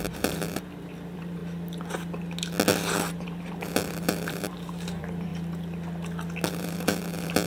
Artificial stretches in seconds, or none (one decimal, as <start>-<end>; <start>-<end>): 0.0-1.4; 3.1-5.3; 6.5-7.5